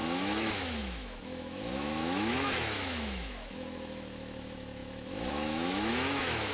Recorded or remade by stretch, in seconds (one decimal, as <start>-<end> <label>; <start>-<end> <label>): 0.0-6.5 remade